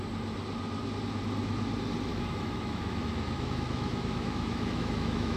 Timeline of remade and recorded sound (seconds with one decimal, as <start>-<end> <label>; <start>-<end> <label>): 0.0-2.1 recorded; 2.1-5.4 remade